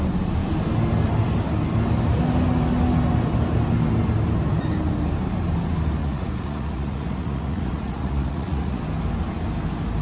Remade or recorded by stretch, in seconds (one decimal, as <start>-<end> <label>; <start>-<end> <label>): 0.0-6.0 recorded; 6.0-8.8 remade; 8.8-10.0 recorded